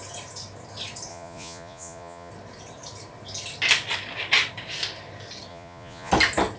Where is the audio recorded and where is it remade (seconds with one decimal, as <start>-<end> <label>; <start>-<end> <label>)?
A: 0.0-1.1 recorded; 1.1-2.3 remade; 2.3-5.5 recorded; 5.5-6.1 remade; 6.1-6.6 recorded